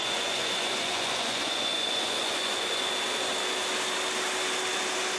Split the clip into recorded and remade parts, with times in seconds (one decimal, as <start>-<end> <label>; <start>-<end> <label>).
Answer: 0.0-2.9 remade; 2.9-5.2 recorded